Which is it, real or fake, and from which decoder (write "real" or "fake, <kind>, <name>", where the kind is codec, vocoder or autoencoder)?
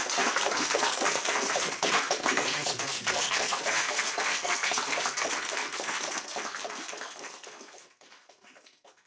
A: fake, codec, SNAC